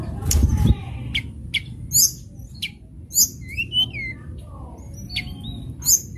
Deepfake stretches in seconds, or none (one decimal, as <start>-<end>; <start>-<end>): none